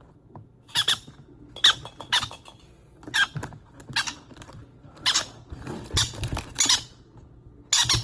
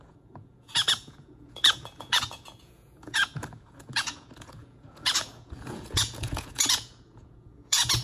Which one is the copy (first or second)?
second